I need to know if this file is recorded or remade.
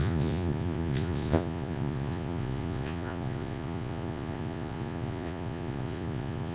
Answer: remade